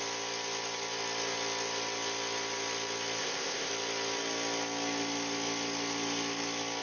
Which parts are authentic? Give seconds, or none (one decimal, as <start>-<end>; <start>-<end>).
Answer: 0.0-3.2; 3.7-6.8